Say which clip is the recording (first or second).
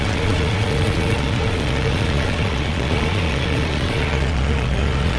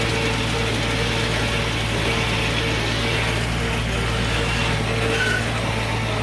second